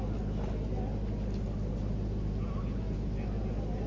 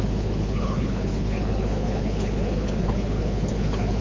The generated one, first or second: second